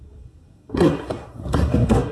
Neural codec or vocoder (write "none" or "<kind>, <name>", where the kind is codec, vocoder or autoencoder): codec, SNAC